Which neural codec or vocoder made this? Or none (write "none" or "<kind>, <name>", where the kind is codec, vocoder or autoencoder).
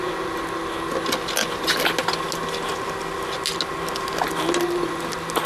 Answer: none